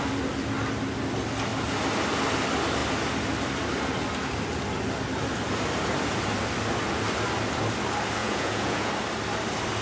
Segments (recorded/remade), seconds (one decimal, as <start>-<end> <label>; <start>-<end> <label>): 0.0-8.2 recorded; 8.2-8.9 remade; 8.9-9.8 recorded